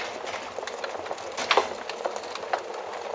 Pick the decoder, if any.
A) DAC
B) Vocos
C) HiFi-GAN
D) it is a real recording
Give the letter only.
D